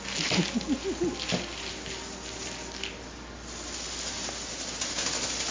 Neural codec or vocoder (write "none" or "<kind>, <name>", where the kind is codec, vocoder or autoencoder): none